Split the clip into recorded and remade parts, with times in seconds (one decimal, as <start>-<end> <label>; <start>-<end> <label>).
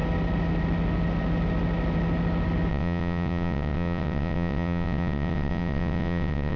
0.0-2.7 recorded; 2.7-6.6 remade